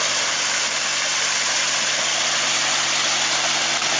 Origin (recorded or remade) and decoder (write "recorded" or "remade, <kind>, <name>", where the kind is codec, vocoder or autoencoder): recorded